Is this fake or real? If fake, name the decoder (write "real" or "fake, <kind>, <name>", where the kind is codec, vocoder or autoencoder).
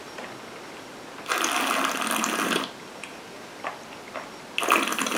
real